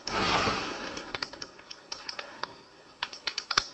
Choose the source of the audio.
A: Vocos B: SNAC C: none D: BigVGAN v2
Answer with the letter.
B